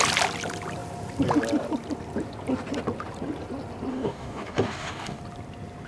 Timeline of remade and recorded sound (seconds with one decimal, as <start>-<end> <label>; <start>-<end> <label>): 0.0-3.9 recorded; 3.9-5.2 remade; 5.2-5.9 recorded

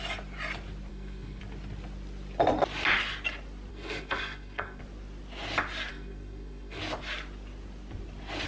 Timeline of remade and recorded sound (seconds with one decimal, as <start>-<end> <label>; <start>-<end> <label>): 0.0-0.9 recorded; 0.9-1.4 remade; 1.4-3.7 recorded; 3.7-4.8 remade; 4.8-5.9 recorded; 5.9-6.8 remade; 6.8-8.5 recorded

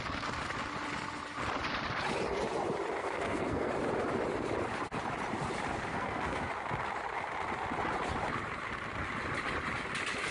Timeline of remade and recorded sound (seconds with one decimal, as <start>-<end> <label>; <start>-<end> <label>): 0.0-3.0 recorded; 3.0-3.7 remade; 3.7-5.9 recorded; 5.9-6.5 remade; 6.5-10.3 recorded

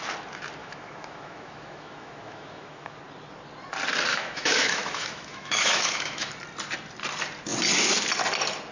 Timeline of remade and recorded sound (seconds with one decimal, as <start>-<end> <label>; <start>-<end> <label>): 0.0-0.6 recorded; 0.6-3.0 remade; 3.0-4.1 recorded; 4.1-6.3 remade; 6.3-8.7 recorded

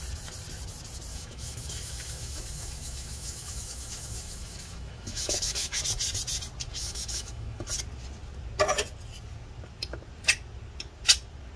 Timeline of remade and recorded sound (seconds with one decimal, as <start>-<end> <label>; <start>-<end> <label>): 0.0-1.1 recorded; 1.1-5.8 remade; 5.8-6.8 recorded; 6.8-7.7 remade; 7.7-11.6 recorded

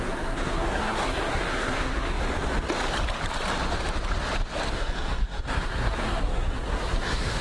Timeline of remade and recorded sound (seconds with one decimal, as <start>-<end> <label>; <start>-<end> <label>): 0.0-2.2 remade; 2.2-4.7 recorded; 4.7-7.4 remade

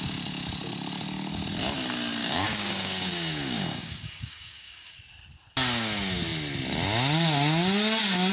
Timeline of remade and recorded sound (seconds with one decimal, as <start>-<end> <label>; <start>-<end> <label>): 0.0-2.2 recorded; 2.2-5.0 remade; 5.0-8.3 recorded